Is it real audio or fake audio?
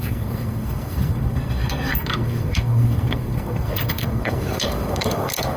fake